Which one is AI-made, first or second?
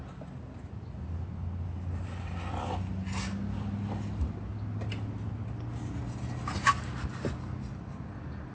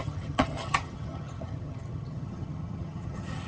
second